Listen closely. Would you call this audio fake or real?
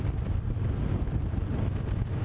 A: fake